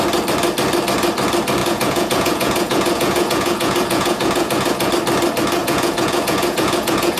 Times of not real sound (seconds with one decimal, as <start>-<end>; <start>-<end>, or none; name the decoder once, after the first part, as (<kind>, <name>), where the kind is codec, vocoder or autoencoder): 1.6-4.9 (vocoder, Vocos); 5.6-7.2